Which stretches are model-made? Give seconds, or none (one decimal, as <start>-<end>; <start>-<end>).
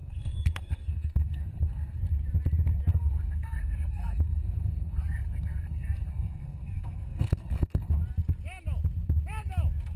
0.0-2.0; 2.9-7.9